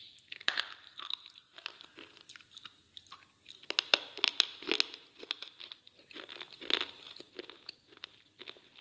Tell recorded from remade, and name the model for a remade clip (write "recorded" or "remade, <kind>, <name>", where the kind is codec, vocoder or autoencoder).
recorded